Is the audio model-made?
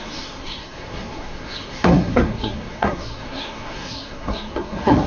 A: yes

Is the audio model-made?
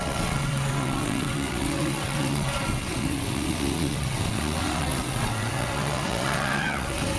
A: yes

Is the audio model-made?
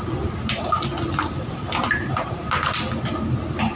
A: no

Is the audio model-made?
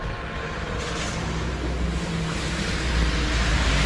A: no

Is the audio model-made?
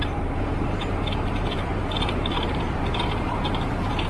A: yes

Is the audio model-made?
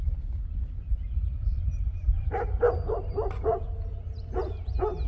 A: no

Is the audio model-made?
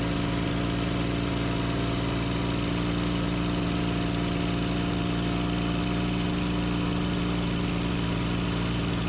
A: no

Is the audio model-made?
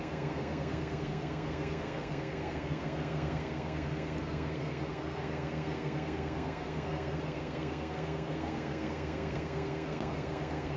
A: yes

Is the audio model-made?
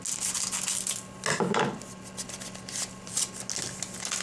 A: no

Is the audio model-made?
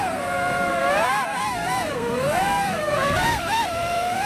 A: yes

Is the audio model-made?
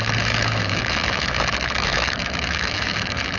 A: yes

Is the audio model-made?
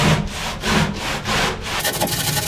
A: no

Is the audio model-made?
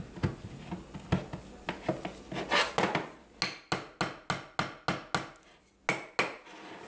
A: no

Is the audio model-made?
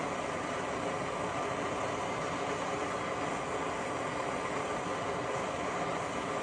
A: no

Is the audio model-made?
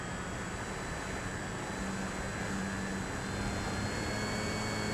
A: no